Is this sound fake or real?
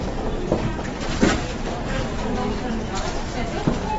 fake